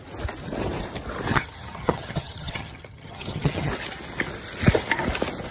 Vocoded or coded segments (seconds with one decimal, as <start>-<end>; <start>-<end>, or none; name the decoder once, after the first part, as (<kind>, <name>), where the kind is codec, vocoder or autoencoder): 1.3-3.7 (vocoder, HiFi-GAN)

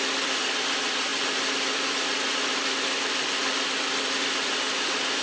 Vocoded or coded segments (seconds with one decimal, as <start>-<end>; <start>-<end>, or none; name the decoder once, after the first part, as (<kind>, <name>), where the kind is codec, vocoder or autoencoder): none

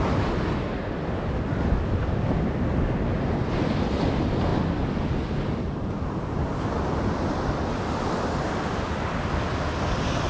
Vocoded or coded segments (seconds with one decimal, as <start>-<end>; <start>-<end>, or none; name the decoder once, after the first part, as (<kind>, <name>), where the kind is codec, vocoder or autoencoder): none

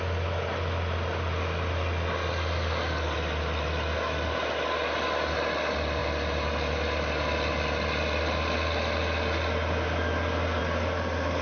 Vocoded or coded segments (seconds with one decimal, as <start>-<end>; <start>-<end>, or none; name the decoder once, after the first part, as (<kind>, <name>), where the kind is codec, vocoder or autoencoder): none

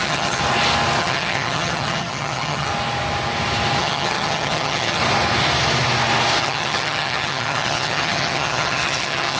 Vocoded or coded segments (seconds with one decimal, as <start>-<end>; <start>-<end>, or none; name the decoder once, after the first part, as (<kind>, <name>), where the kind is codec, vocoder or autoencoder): 0.0-0.4 (vocoder, HiFi-GAN); 1.0-2.7; 3.8-5.0; 6.4-9.4